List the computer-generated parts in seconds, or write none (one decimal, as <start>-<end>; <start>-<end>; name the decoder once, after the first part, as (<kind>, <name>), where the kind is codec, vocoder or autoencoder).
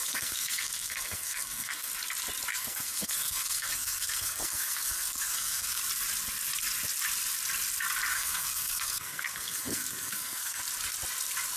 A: 0.0-1.9 (codec, SNAC); 2.5-5.8; 8.1-10.6